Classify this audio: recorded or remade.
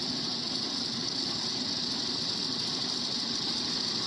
remade